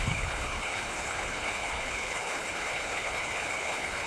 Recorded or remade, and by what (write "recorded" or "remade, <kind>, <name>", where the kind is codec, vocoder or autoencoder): remade, codec, HILCodec